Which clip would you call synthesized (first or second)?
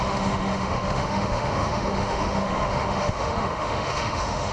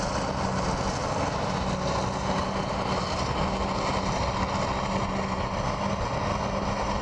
first